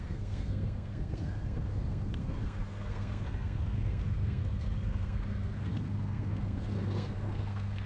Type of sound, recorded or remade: remade